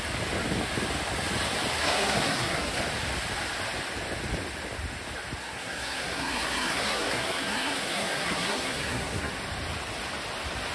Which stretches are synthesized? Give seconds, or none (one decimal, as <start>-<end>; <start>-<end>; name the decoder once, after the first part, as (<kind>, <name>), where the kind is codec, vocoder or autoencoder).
1.8-2.8 (codec, SNAC); 5.4-9.3